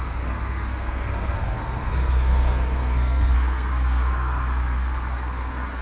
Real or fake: fake